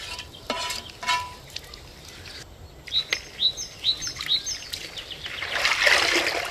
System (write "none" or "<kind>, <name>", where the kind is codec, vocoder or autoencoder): none